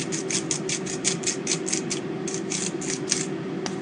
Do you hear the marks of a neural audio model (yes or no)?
no